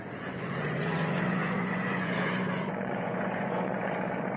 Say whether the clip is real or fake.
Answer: fake